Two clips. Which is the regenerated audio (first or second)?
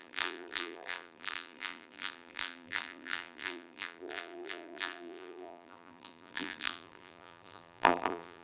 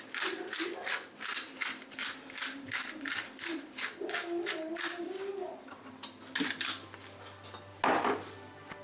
first